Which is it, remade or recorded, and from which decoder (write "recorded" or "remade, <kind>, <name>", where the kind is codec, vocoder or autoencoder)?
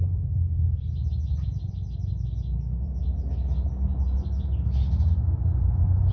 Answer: recorded